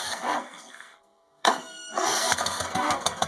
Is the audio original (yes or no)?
no